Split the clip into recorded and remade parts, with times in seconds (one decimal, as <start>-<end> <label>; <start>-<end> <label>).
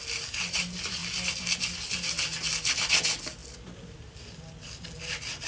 0.0-5.5 recorded